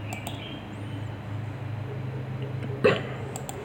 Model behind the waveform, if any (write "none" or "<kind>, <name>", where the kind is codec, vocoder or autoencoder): none